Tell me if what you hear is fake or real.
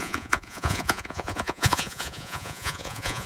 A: fake